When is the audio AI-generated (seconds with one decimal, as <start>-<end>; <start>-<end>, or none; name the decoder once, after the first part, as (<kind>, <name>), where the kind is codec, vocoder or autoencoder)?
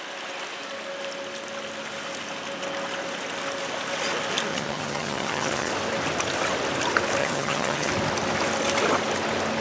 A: 4.5-5.7 (vocoder, HiFi-GAN); 7.2-7.9